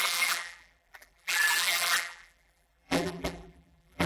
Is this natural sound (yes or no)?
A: no